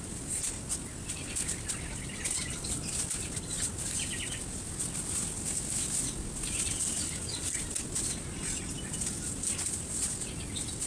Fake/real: real